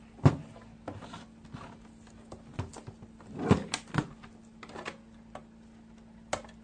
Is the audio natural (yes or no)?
yes